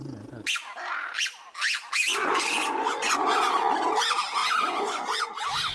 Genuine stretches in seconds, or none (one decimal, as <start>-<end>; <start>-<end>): 0.0-2.1; 3.5-4.4; 5.3-5.7